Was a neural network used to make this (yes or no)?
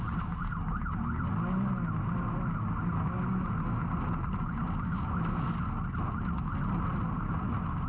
no